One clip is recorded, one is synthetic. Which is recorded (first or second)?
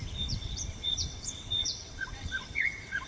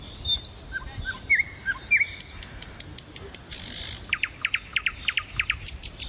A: second